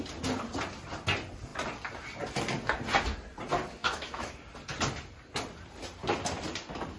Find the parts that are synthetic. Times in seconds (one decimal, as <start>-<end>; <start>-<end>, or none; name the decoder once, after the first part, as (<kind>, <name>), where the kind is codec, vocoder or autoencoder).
3.8-4.3 (autoencoder, DAC-VAE)